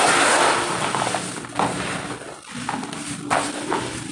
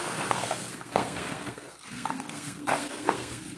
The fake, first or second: second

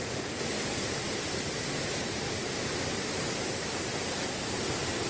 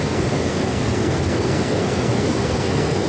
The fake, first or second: second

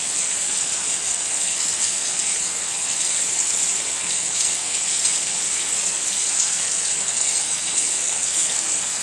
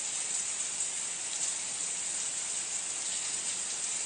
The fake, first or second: first